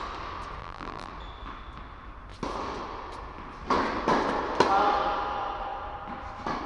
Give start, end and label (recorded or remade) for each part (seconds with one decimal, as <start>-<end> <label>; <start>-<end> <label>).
0.0-0.6 recorded; 0.6-1.1 remade; 1.1-6.7 recorded